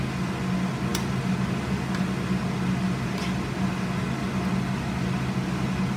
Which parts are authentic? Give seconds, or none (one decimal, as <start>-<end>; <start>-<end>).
0.0-6.0